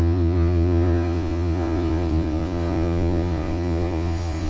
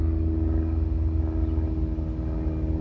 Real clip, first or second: second